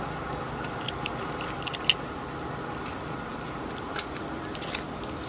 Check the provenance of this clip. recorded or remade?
recorded